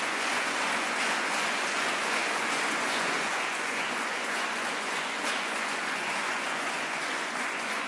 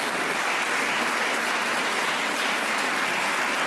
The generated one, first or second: first